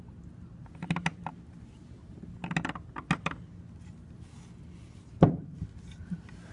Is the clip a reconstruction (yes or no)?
no